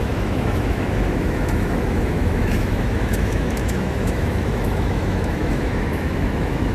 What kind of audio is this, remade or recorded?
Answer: remade